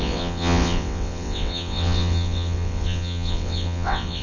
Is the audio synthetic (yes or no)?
yes